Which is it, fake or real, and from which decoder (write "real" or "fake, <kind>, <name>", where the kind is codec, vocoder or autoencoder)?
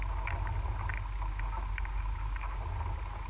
real